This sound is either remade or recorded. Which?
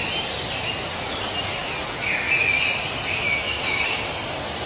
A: recorded